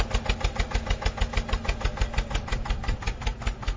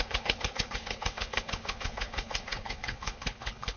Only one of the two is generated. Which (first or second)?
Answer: second